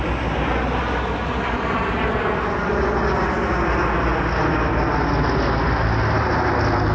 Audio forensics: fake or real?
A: real